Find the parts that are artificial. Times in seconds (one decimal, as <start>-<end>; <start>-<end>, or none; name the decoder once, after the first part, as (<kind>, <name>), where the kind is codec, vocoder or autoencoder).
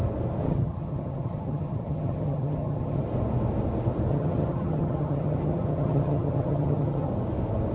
0.4-3.0 (vocoder, HiFi-GAN); 4.1-7.1